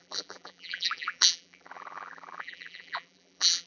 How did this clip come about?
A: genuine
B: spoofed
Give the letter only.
B